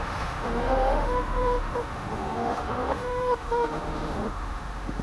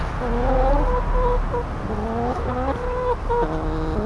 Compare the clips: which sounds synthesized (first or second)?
first